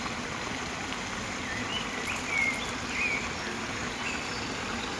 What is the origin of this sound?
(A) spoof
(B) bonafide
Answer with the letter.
B